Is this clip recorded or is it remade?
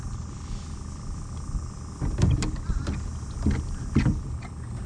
recorded